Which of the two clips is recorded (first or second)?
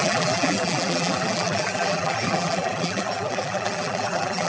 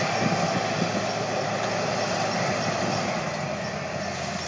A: second